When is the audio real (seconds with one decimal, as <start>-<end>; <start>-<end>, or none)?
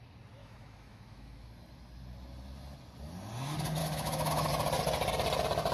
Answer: 0.0-0.4; 1.5-3.8; 4.5-5.7